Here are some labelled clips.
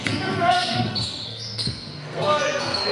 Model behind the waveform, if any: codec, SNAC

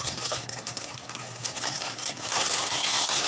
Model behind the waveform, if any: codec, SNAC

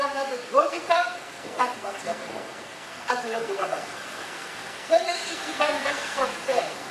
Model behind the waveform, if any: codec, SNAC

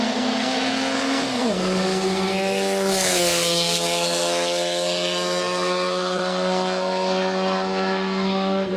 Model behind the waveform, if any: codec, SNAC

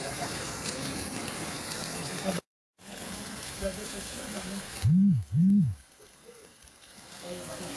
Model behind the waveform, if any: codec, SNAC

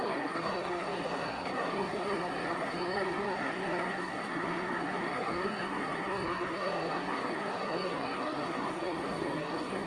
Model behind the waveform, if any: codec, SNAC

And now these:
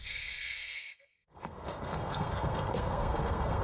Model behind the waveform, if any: codec, SNAC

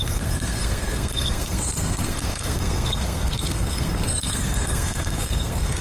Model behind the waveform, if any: codec, SNAC